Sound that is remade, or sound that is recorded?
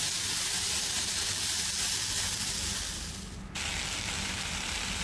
recorded